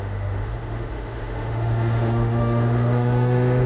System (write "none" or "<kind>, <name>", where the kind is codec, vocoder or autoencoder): autoencoder, DAC-VAE